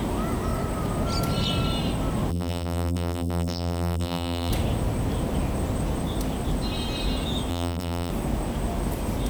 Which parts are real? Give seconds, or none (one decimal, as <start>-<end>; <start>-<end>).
0.0-2.3; 4.5-7.5; 8.1-9.3